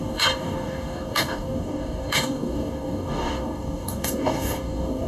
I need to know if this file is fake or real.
fake